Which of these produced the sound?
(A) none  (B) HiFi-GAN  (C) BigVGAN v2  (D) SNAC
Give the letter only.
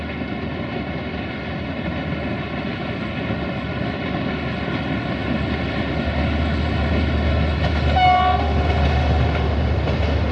A